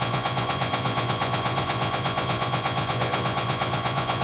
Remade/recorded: remade